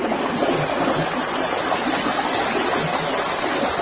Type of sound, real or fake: real